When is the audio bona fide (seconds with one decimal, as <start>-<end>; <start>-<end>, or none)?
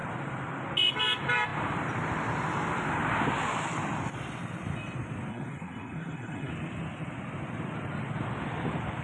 0.0-5.3; 6.5-9.0